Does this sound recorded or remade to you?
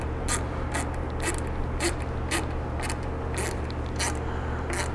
recorded